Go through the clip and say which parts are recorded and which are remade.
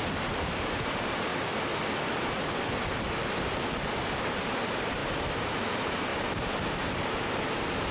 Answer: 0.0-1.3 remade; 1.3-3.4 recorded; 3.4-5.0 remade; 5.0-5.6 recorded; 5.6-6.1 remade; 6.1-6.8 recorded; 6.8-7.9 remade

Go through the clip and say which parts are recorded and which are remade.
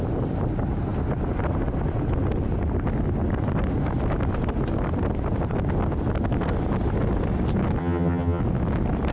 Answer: 0.0-7.8 recorded; 7.8-8.4 remade; 8.4-9.1 recorded